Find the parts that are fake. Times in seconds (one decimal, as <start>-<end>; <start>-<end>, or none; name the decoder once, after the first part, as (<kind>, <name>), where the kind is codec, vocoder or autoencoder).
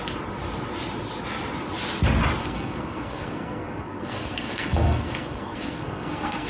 2.4-6.5 (codec, SNAC)